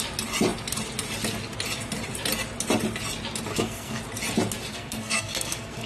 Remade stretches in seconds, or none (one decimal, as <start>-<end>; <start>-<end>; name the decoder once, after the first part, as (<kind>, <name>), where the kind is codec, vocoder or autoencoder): 3.5-4.0 (codec, SNAC); 4.7-5.9